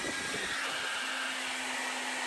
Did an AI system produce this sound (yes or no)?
no